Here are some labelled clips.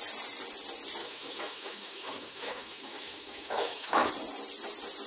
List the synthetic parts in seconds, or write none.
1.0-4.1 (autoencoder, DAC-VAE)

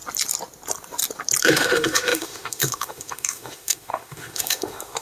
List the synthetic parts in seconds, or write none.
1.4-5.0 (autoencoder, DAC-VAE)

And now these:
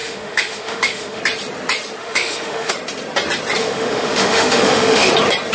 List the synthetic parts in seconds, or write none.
0.0-1.2 (autoencoder, DAC-VAE); 2.0-2.7; 3.6-5.1

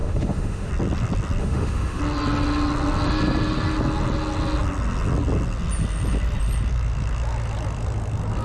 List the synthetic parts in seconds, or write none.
0.0-0.7 (autoencoder, DAC-VAE); 1.4-2.0

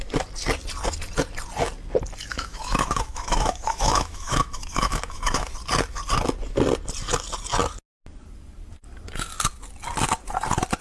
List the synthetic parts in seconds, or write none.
2.3-5.5 (autoencoder, DAC-VAE)

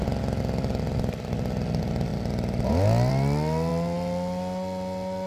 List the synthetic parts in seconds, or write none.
none

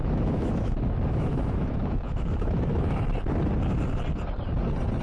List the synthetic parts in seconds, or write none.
0.0-3.0 (autoencoder, DAC-VAE)

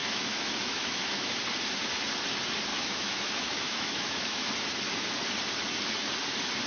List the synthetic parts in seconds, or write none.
0.0-1.4 (autoencoder, DAC-VAE); 2.7-4.5